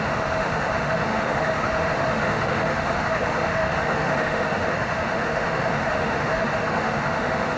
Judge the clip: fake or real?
fake